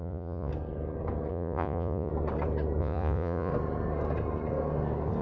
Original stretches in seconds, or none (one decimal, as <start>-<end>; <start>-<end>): 0.5-1.3; 2.1-2.8; 3.5-5.2